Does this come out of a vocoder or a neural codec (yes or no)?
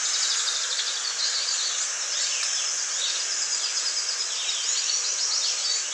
no